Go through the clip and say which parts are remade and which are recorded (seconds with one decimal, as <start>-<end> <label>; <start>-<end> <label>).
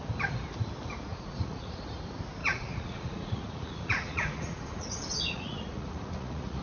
0.0-1.1 recorded; 1.1-1.8 remade; 1.8-2.4 recorded; 2.4-6.6 remade